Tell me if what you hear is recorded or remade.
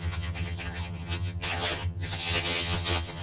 remade